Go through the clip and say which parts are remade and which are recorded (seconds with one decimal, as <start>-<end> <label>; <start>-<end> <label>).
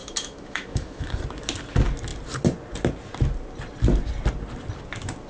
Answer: 0.0-1.1 remade; 1.1-5.3 recorded